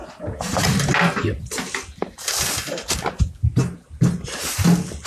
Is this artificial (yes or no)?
no